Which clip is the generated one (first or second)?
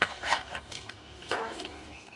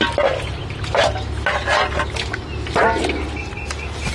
first